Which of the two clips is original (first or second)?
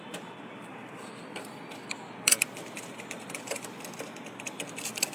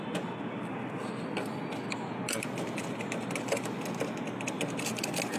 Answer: second